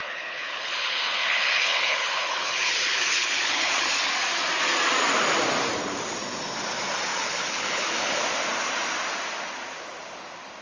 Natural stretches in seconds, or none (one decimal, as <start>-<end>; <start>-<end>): 4.1-7.1; 8.2-10.6